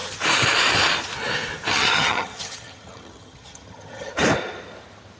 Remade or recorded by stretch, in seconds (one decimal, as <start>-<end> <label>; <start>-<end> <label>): 0.0-1.7 recorded; 1.7-4.1 remade; 4.1-5.2 recorded